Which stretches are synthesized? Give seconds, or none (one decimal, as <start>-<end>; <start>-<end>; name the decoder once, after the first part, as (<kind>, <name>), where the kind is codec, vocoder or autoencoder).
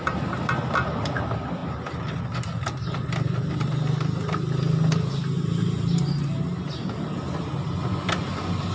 none